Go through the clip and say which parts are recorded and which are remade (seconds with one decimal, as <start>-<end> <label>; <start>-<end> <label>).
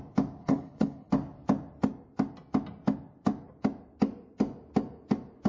0.0-0.4 recorded; 0.4-1.1 remade; 1.1-5.5 recorded